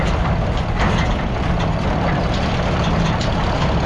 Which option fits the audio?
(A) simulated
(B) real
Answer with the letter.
A